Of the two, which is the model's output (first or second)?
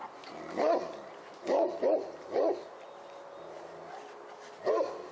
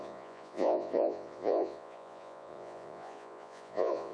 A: second